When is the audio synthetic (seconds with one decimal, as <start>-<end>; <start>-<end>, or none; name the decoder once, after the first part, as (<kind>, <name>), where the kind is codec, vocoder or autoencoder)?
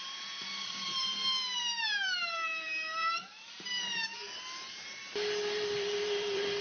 0.0-4.0 (vocoder, BigVGAN v2); 4.7-6.6